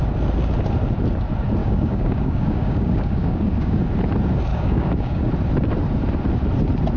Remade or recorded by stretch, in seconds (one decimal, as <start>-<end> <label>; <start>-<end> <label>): 0.0-1.6 recorded; 1.6-3.8 remade; 3.8-4.5 recorded; 4.5-5.3 remade; 5.3-7.0 recorded

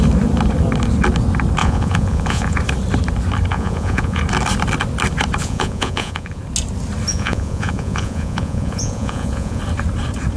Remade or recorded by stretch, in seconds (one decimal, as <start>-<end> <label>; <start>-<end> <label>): 0.0-1.6 recorded; 1.6-2.6 remade; 2.6-3.5 recorded; 3.5-4.2 remade; 4.2-5.4 recorded; 5.4-6.4 remade; 6.4-7.1 recorded; 7.1-9.6 remade; 9.6-10.4 recorded

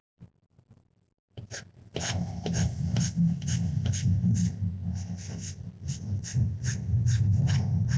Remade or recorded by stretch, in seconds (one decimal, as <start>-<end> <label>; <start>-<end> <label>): 0.0-8.0 recorded

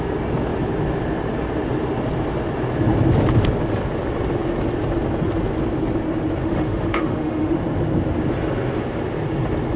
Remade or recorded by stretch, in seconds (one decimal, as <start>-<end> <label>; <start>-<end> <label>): 0.0-6.4 recorded; 6.4-7.6 remade; 7.6-9.8 recorded

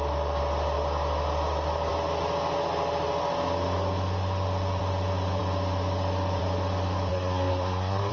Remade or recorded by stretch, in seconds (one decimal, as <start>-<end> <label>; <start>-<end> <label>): 0.0-7.1 recorded; 7.1-8.1 remade

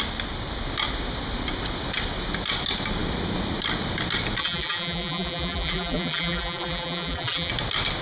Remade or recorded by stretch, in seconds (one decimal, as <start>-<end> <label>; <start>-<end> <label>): 0.0-4.4 recorded; 4.4-7.5 remade; 7.5-8.0 recorded